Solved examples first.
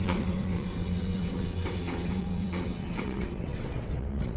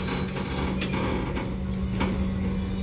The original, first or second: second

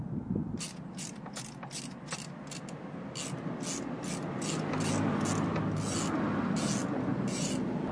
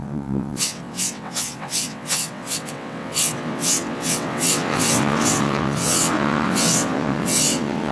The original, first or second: first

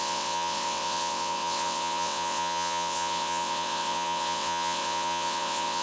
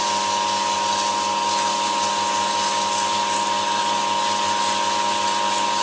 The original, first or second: second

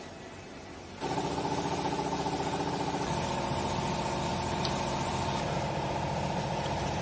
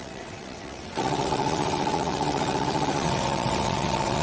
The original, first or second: first